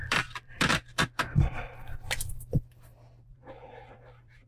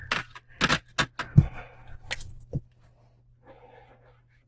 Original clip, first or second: second